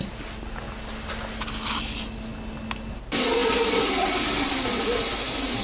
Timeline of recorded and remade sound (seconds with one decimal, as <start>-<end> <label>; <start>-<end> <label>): 0.0-5.6 recorded